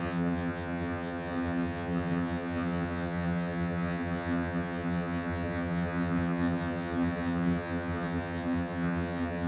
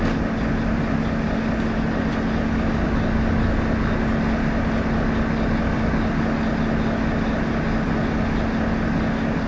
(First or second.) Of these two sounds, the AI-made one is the first